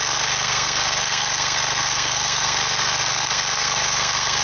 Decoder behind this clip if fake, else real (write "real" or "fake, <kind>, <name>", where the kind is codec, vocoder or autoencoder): fake, codec, SNAC